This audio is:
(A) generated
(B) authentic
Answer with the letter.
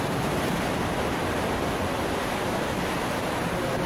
A